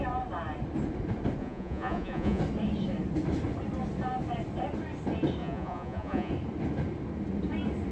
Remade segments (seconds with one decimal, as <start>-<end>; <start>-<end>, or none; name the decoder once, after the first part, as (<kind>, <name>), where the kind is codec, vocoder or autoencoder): 1.4-2.4 (vocoder, Vocos); 5.4-6.3